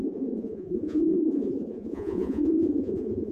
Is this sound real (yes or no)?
no